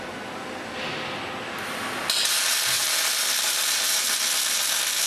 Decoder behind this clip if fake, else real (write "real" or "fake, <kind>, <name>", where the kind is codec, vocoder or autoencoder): real